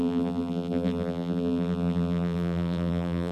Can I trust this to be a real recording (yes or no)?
no